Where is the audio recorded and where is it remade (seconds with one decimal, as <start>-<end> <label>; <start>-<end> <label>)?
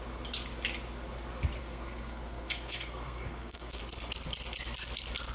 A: 0.0-1.6 recorded; 1.6-3.8 remade; 3.8-5.3 recorded